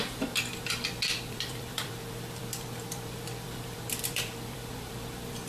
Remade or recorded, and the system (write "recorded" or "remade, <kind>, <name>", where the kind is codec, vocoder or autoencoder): remade, vocoder, BigVGAN v2